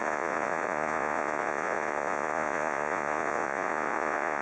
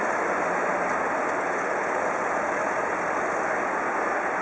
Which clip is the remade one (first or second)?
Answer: first